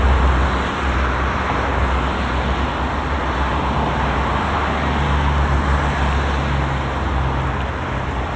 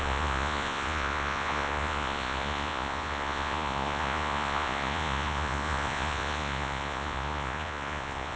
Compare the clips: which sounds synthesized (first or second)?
second